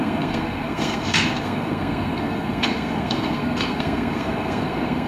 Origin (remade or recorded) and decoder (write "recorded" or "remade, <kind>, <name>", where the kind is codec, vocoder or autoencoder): remade, codec, SNAC